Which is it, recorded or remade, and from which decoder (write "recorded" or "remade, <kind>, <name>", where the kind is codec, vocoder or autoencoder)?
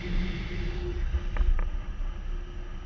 recorded